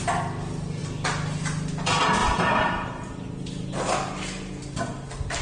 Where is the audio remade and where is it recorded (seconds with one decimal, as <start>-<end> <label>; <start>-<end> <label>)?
0.0-2.2 recorded; 2.2-3.2 remade; 3.2-5.4 recorded